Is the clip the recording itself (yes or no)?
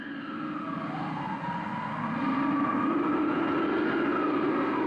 yes